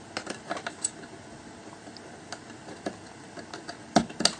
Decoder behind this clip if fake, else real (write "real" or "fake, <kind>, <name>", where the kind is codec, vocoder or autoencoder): real